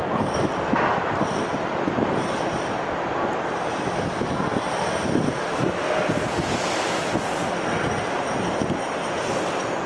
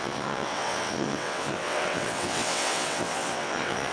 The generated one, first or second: second